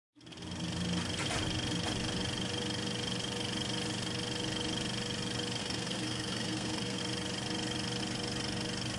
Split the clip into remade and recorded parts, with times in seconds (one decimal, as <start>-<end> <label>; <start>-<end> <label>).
0.0-5.6 recorded; 5.6-7.0 remade; 7.0-9.0 recorded